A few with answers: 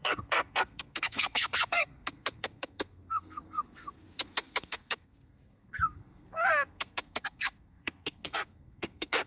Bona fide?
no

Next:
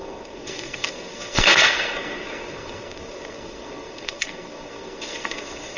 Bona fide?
no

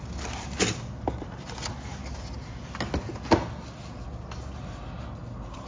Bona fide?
yes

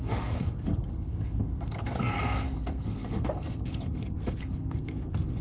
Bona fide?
no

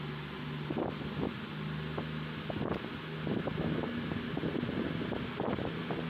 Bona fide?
yes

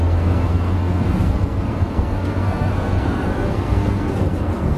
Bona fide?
no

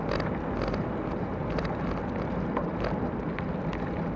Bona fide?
yes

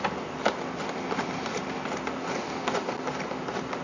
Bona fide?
yes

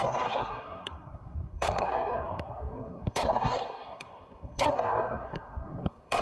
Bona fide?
no